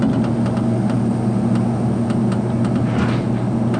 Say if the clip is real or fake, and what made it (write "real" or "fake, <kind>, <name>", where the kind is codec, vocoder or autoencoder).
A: real